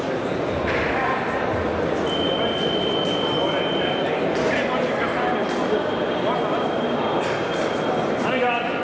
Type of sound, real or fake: real